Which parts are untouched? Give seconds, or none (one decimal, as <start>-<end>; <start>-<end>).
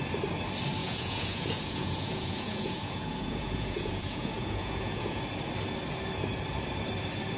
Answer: 0.0-0.8; 5.2-7.4